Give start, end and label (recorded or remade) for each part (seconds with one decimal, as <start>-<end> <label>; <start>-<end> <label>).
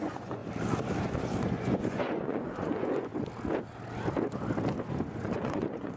0.0-0.4 remade; 0.4-1.4 recorded; 1.4-3.1 remade; 3.1-5.1 recorded; 5.1-6.0 remade